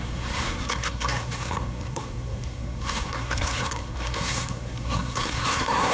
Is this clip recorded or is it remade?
remade